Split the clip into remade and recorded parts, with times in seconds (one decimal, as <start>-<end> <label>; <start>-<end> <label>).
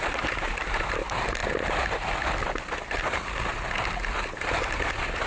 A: 0.0-1.4 remade; 1.4-4.6 recorded; 4.6-5.3 remade